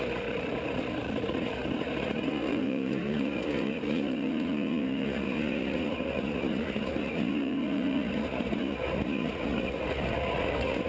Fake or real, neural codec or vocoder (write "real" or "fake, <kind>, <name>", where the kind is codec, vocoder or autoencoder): fake, vocoder, Vocos